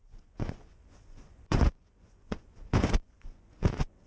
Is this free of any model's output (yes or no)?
no